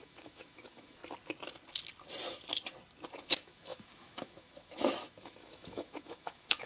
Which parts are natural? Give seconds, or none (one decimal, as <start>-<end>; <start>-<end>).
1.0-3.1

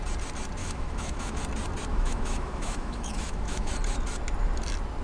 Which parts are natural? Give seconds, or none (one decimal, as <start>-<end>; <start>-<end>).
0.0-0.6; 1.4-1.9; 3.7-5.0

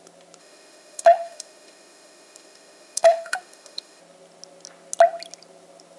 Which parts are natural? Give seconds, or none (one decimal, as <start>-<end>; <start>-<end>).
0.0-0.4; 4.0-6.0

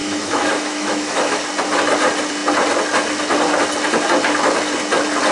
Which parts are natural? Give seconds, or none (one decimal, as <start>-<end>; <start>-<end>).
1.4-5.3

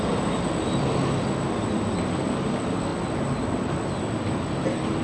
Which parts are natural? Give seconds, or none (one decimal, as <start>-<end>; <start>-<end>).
0.0-5.0

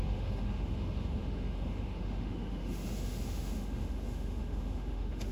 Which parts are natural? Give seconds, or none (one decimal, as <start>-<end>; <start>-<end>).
none

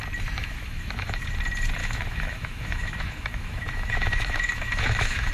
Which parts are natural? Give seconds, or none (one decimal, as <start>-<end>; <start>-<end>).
0.0-0.4; 1.2-1.8

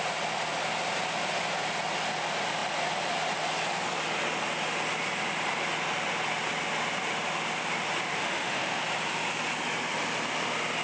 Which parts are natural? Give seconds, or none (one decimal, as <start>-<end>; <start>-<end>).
0.0-8.1; 8.8-10.8